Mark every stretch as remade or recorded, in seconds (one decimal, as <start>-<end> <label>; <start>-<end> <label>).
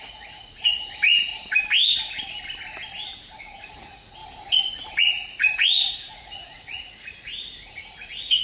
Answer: 0.0-1.3 remade; 1.3-3.4 recorded; 3.4-4.2 remade; 4.2-5.0 recorded; 5.0-8.4 remade